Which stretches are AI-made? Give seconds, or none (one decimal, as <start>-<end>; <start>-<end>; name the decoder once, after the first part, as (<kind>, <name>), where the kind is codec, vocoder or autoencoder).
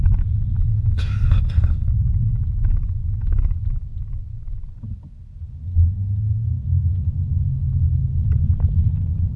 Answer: 0.7-1.9 (autoencoder, DAC-VAE)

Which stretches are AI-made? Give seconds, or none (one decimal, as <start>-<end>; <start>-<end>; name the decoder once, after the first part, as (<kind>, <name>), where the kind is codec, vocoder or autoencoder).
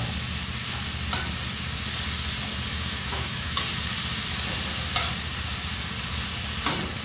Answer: 2.7-3.6 (autoencoder, DAC-VAE)